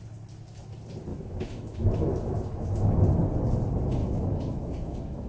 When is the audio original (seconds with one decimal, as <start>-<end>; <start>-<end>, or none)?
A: 0.0-1.1; 3.0-4.0